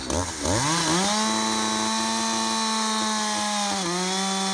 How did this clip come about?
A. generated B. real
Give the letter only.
B